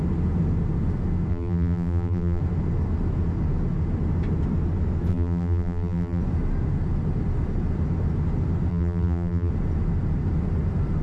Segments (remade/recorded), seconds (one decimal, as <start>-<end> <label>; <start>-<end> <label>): 0.0-1.3 recorded; 1.3-2.4 remade; 2.4-5.1 recorded; 5.1-6.2 remade; 6.2-8.7 recorded; 8.7-9.5 remade; 9.5-11.0 recorded